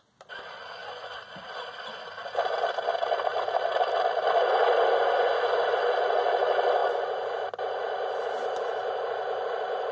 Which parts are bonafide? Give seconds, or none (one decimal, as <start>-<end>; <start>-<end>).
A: 0.0-9.9